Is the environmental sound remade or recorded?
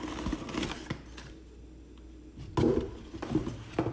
recorded